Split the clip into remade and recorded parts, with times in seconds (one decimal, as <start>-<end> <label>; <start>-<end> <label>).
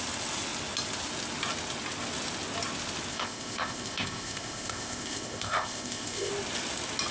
0.0-3.1 recorded; 3.1-6.3 remade; 6.3-7.1 recorded